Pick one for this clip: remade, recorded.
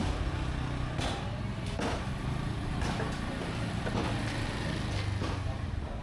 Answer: recorded